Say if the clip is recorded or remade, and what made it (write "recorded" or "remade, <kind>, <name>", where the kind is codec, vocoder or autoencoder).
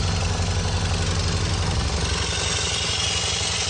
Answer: recorded